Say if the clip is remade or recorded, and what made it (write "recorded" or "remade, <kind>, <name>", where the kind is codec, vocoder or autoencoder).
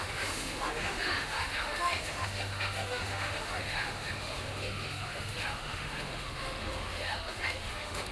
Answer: remade, autoencoder, DAC-VAE